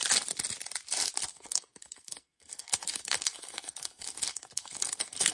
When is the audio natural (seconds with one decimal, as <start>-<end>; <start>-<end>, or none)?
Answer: 0.0-1.3